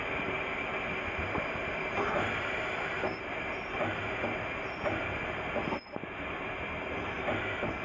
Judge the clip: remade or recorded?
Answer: recorded